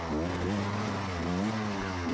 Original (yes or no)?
yes